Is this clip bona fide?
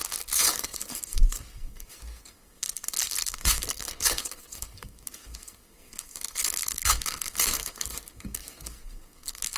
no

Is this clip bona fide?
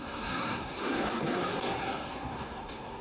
no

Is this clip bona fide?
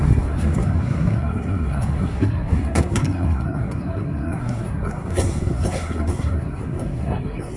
no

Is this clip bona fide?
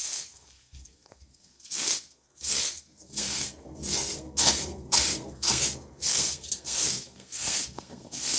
no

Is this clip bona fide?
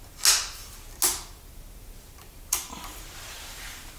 yes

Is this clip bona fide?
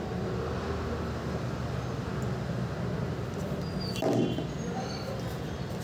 yes